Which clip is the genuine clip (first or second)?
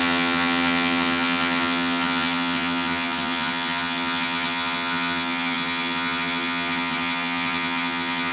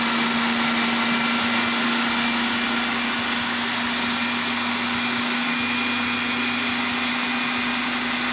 second